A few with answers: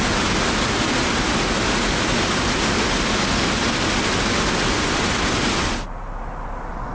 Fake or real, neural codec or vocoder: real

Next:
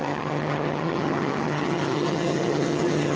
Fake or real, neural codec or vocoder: fake, vocoder, HiFi-GAN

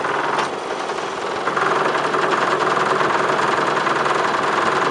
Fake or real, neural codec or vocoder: real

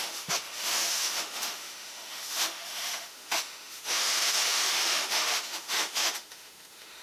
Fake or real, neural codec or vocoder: fake, autoencoder, DAC-VAE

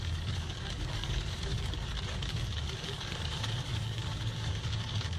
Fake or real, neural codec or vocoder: fake, codec, DAC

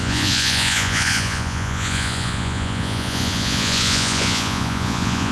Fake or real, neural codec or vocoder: fake, vocoder, Vocos